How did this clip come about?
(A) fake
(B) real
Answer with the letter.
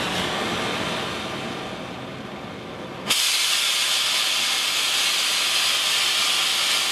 B